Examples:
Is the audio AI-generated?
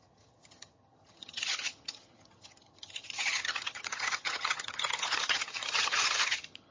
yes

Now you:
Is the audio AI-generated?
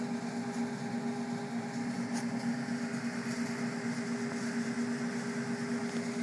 no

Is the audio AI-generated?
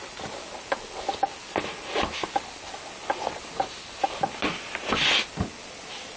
no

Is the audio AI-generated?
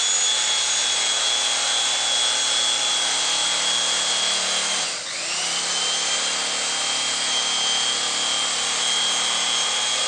no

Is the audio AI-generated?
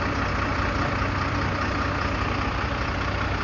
no